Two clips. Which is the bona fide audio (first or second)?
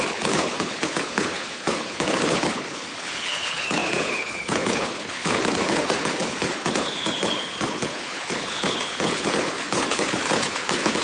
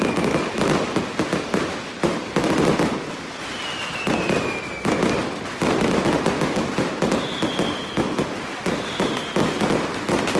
second